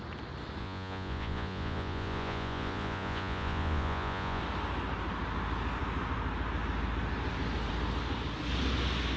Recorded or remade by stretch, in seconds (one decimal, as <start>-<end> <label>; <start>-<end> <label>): 0.0-0.6 recorded; 0.6-4.4 remade; 4.4-9.2 recorded